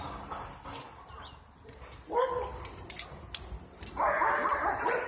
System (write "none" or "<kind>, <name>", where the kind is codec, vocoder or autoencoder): none